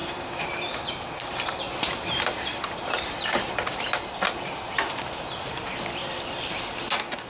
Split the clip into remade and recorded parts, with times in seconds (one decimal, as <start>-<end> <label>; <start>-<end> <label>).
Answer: 0.0-3.9 remade; 3.9-7.3 recorded